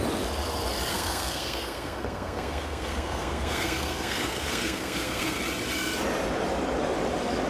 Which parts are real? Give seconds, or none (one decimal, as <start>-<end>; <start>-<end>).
0.0-0.9; 5.4-7.5